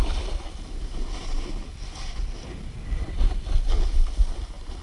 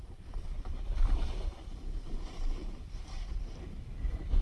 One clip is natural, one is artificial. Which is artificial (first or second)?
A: second